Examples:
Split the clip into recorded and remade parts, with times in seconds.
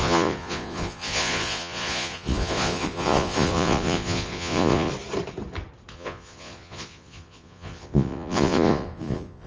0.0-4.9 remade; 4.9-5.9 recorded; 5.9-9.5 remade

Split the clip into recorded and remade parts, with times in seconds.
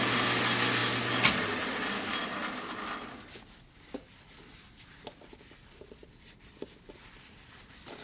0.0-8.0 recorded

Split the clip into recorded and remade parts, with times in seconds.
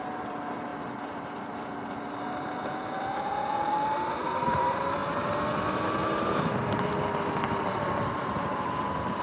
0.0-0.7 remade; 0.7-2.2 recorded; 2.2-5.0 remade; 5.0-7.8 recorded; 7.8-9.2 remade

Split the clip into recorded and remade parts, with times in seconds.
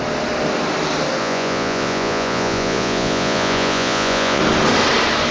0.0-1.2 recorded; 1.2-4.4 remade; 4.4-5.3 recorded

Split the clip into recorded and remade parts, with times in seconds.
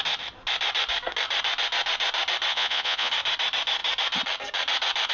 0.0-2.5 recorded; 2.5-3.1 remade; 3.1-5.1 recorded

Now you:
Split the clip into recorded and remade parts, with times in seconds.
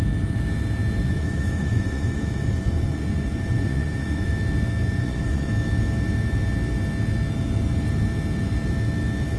0.0-1.0 recorded; 1.0-4.3 remade; 4.3-4.8 recorded; 4.8-5.5 remade; 5.5-9.4 recorded